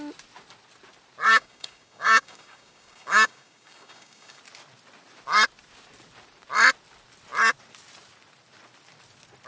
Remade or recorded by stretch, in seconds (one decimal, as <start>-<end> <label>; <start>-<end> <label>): 0.0-1.3 recorded; 1.3-4.4 remade; 4.4-9.5 recorded